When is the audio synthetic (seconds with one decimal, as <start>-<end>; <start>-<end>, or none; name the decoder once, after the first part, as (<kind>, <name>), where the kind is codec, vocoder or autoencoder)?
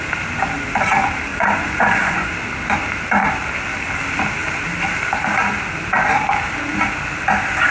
1.3-2.3 (vocoder, Vocos)